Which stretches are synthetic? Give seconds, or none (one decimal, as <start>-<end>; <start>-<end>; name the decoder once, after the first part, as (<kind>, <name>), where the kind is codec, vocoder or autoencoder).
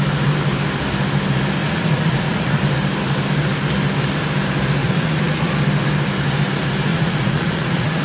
1.6-2.6 (vocoder, Vocos); 4.8-5.5; 6.9-8.0